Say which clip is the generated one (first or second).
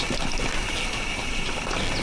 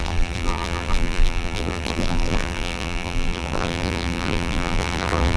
second